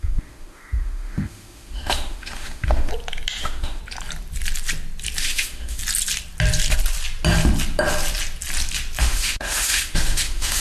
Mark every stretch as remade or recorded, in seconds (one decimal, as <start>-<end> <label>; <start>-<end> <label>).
0.0-2.9 remade; 2.9-3.4 recorded; 3.4-3.8 remade; 3.8-5.2 recorded; 5.2-5.8 remade; 5.8-9.0 recorded; 9.0-10.6 remade